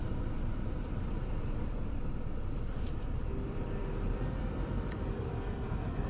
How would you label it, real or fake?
fake